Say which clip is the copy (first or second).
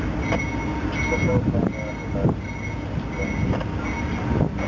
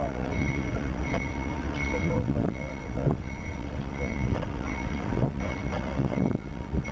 second